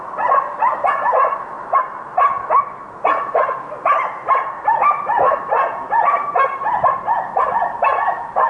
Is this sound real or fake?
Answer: real